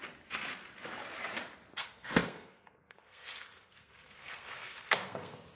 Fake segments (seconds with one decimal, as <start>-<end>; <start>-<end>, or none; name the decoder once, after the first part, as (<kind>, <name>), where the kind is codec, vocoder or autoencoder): 1.8-5.6 (codec, SNAC)